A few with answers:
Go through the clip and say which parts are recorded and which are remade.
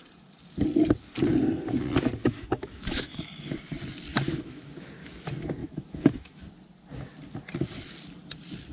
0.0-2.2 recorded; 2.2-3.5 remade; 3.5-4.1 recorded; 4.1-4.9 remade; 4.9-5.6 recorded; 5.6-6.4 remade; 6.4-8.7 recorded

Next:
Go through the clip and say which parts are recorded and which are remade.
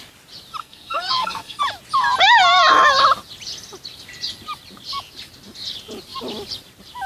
0.0-0.6 recorded; 0.6-1.6 remade; 1.6-7.1 recorded